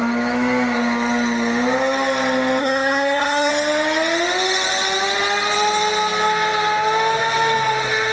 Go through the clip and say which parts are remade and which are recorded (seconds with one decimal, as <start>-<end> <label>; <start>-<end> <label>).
0.0-2.6 recorded; 2.6-3.5 remade; 3.5-8.1 recorded